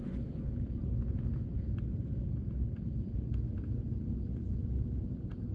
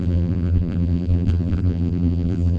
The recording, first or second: first